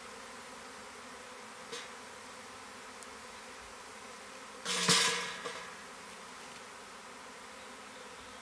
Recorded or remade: recorded